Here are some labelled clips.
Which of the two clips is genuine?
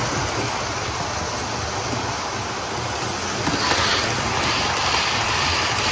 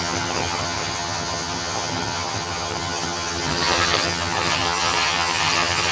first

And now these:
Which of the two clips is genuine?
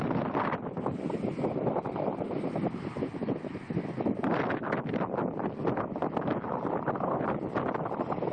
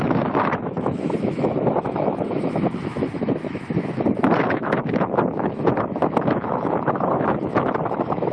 first